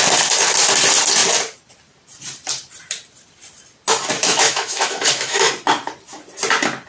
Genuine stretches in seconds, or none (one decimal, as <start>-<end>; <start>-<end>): 0.0-4.2; 5.5-6.9